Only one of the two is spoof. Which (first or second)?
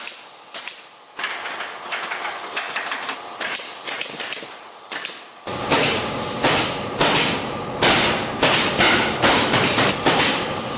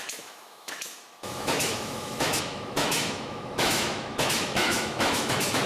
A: second